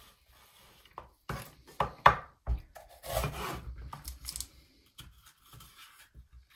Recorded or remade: recorded